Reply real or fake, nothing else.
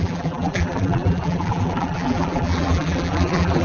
fake